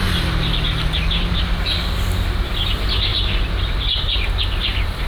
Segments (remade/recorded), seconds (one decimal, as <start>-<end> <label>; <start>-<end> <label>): 0.0-5.1 recorded